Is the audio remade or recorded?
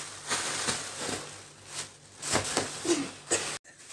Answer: recorded